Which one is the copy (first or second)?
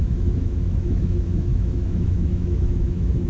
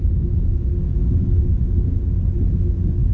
first